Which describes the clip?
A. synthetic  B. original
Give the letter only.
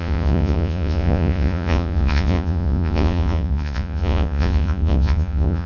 A